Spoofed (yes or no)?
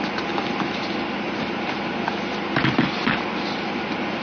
no